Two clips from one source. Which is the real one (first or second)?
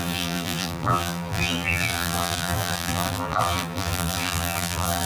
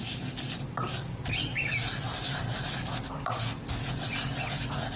second